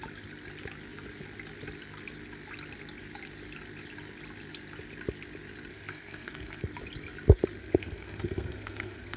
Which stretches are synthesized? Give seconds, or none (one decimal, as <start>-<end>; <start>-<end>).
5.7-6.6; 7.6-9.2